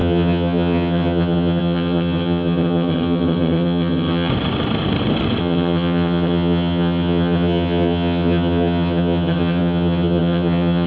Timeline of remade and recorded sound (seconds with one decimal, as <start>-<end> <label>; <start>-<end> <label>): 0.0-4.3 remade; 4.3-5.4 recorded; 5.4-10.9 remade